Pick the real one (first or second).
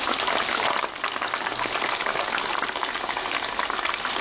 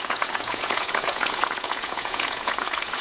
first